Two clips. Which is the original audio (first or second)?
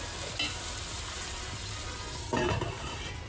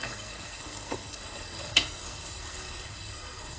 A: first